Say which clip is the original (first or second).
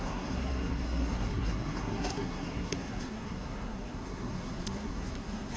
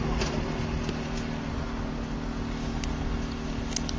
second